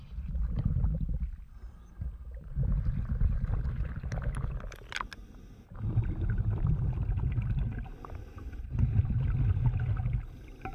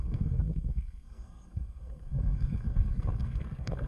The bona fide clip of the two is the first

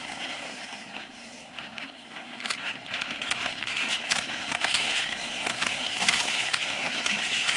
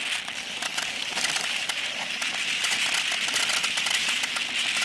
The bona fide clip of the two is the second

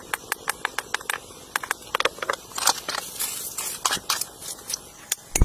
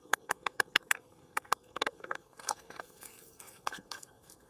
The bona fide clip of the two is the first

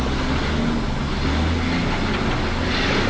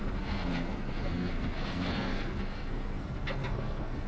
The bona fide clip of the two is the first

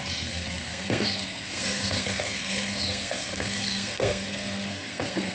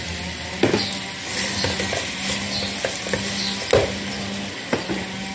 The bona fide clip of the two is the second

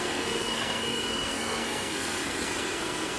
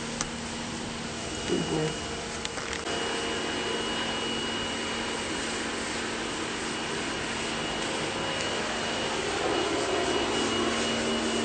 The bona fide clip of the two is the second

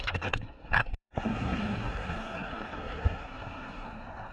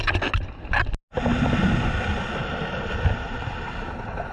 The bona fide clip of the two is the second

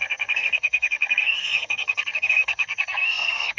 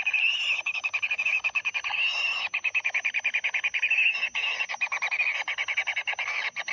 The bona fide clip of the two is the second